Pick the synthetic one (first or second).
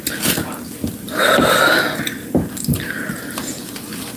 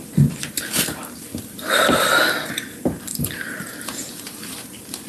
second